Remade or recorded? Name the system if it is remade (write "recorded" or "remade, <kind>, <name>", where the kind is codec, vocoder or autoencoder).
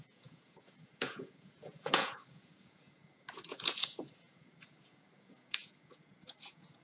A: remade, vocoder, Vocos